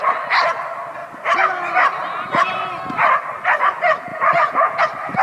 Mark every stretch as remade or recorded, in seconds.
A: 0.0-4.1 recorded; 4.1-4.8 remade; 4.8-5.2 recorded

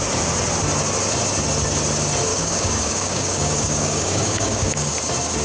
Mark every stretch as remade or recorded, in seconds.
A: 0.0-2.3 recorded; 2.3-4.9 remade; 4.9-5.4 recorded

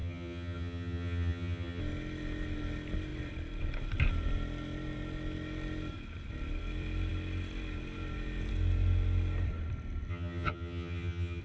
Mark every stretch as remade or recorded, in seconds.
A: 0.0-1.8 remade; 1.8-10.1 recorded; 10.1-11.4 remade